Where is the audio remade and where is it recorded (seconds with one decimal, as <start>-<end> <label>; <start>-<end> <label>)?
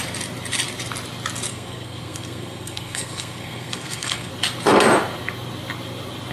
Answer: 0.0-1.5 recorded; 1.5-4.3 remade; 4.3-6.3 recorded